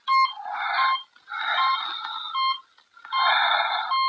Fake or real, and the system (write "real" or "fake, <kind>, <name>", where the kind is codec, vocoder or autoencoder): real